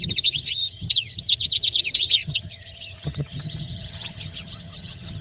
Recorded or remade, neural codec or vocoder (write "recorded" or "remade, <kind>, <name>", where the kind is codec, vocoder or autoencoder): remade, vocoder, HiFi-GAN